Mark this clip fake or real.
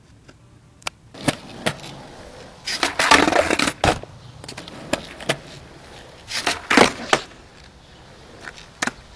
real